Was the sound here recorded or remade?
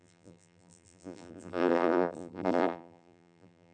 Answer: remade